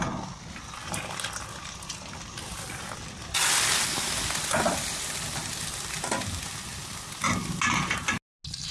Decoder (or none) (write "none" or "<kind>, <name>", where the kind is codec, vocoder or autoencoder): none